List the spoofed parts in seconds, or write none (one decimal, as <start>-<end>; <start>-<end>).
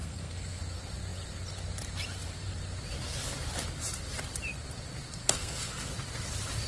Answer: 0.0-0.6; 5.2-5.9